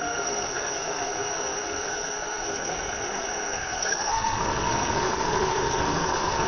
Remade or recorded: remade